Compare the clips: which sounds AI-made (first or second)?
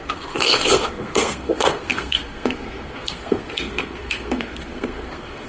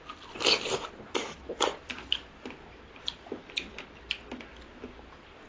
first